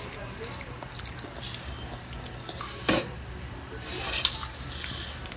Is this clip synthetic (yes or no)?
no